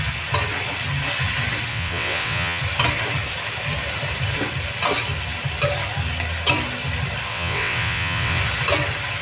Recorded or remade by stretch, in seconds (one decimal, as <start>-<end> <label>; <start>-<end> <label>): 0.0-1.7 recorded; 1.7-2.6 remade; 2.6-7.3 recorded; 7.3-8.4 remade; 8.4-9.2 recorded

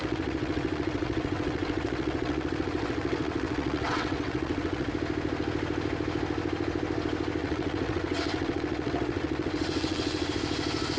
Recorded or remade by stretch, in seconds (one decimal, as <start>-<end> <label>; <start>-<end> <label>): 0.0-4.9 remade; 4.9-7.4 recorded; 7.4-10.3 remade; 10.3-11.0 recorded